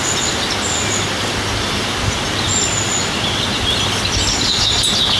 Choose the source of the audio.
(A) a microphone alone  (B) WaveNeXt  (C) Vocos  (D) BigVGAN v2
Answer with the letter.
A